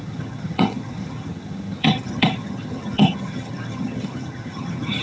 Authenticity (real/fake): fake